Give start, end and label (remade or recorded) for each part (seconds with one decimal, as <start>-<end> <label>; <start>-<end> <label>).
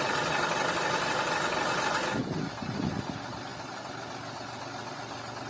0.0-2.2 recorded; 2.2-3.0 remade; 3.0-5.5 recorded